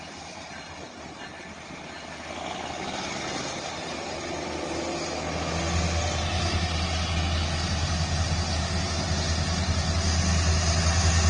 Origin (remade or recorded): recorded